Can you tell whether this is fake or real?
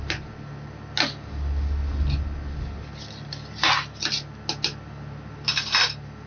real